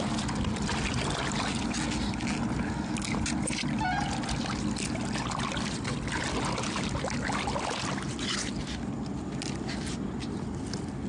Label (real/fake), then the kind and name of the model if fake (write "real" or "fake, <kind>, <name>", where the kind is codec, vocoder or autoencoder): real